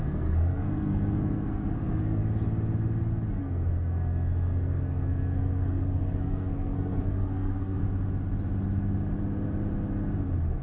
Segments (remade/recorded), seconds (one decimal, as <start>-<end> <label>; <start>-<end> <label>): 0.0-2.2 remade; 2.2-3.3 recorded; 3.3-7.8 remade; 7.8-10.6 recorded